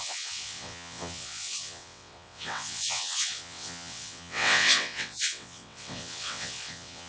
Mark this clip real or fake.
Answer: fake